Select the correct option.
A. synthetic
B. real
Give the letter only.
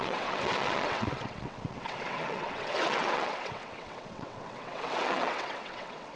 A